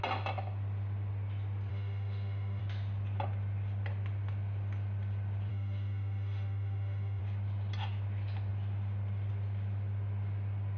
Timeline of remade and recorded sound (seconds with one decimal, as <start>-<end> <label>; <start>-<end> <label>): 0.0-1.7 recorded; 1.7-2.6 remade; 2.6-5.5 recorded; 5.5-7.2 remade; 7.2-10.8 recorded